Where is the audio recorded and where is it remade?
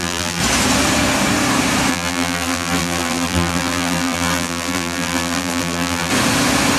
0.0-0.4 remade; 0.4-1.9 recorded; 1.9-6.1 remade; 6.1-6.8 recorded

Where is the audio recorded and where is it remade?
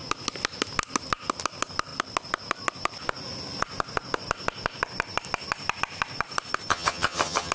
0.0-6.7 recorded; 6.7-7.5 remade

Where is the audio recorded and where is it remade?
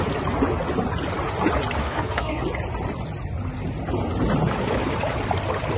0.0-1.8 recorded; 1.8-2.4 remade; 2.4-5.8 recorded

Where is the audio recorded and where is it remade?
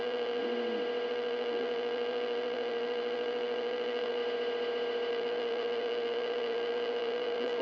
0.0-0.4 remade; 0.4-1.1 recorded; 1.1-4.2 remade; 4.2-5.1 recorded; 5.1-7.6 remade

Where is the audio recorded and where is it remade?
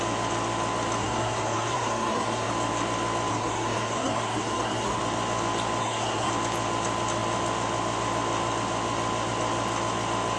0.0-1.0 recorded; 1.0-2.5 remade; 2.5-3.3 recorded; 3.3-5.0 remade; 5.0-5.8 recorded; 5.8-6.3 remade; 6.3-10.4 recorded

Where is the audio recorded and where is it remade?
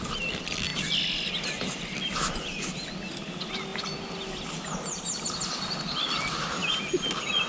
0.0-7.5 recorded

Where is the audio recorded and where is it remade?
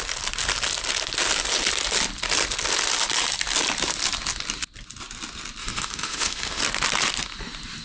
0.0-5.6 recorded; 5.6-6.6 remade; 6.6-7.8 recorded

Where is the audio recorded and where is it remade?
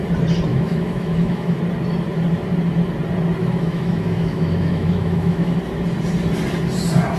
0.0-0.5 recorded; 0.5-1.6 remade; 1.6-3.4 recorded; 3.4-5.6 remade; 5.6-7.2 recorded